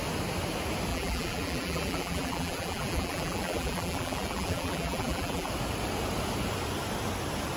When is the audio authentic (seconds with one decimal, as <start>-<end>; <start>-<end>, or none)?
0.0-0.9; 5.5-7.6